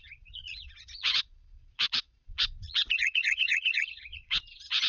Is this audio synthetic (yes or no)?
yes